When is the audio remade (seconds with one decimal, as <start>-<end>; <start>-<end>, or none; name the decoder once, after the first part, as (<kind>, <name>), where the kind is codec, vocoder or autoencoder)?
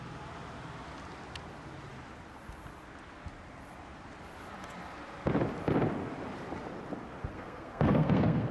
7.2-8.5 (codec, SNAC)